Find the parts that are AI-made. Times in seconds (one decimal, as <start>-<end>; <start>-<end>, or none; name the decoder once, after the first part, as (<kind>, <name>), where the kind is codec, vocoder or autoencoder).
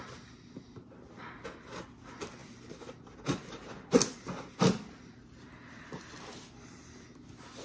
none